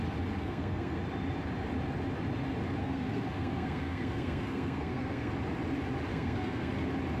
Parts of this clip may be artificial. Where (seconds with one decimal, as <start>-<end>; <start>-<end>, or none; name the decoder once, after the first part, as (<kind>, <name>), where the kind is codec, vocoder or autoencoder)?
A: 0.4-1.0 (codec, SNAC); 2.8-5.3; 6.1-6.7